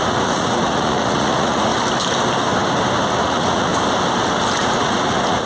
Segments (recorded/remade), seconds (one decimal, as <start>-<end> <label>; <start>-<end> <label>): 0.0-1.7 remade; 1.7-3.1 recorded; 3.1-3.7 remade; 3.7-4.6 recorded; 4.6-5.5 remade